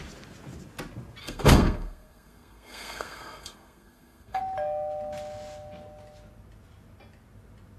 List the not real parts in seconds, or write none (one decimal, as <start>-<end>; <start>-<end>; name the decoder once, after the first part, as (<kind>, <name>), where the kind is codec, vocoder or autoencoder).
1.2-4.4 (codec, SNAC)